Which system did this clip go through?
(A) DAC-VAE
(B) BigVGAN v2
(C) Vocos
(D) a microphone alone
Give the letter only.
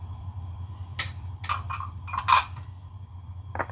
B